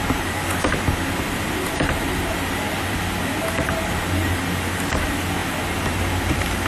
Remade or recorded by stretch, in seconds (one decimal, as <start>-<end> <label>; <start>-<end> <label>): 0.0-6.7 recorded